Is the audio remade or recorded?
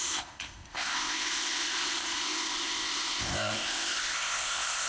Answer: remade